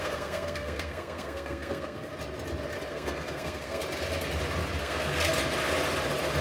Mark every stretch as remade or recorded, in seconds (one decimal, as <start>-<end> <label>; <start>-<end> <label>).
0.0-2.1 remade; 2.1-2.9 recorded; 2.9-3.8 remade; 3.8-4.8 recorded; 4.8-5.3 remade; 5.3-6.4 recorded